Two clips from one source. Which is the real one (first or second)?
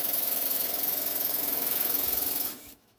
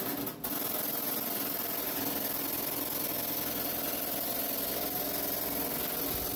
second